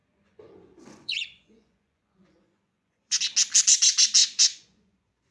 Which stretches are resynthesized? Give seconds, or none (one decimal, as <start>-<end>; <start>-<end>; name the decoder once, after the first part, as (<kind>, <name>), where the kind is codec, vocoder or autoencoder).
0.0-3.2 (vocoder, Vocos); 4.2-5.3